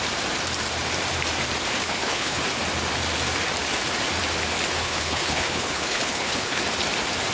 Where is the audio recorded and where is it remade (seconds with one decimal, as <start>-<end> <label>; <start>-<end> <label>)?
0.0-1.8 recorded; 1.8-2.4 remade; 2.4-4.8 recorded; 4.8-6.6 remade; 6.6-7.3 recorded